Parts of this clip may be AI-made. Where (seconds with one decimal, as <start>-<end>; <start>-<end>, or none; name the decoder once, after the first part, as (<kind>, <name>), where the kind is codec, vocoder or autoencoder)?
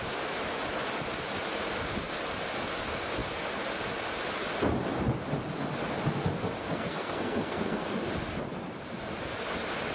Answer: 6.6-7.9 (codec, SNAC)